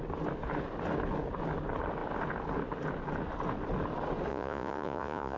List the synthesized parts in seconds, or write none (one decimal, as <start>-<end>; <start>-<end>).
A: 4.3-5.4